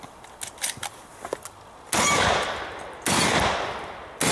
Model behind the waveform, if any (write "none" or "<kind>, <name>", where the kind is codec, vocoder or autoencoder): none